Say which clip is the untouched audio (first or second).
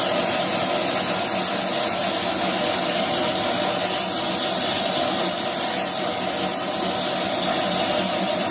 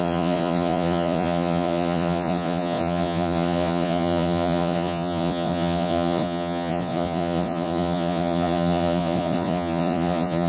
first